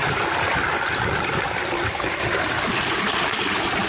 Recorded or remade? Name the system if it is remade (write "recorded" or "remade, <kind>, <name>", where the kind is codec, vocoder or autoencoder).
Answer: recorded